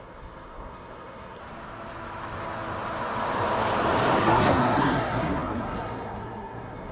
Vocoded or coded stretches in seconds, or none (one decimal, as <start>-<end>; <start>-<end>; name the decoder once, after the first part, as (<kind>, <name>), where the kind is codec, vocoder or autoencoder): 0.0-1.4 (codec, SNAC); 4.2-6.9